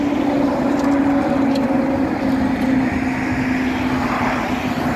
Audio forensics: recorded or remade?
recorded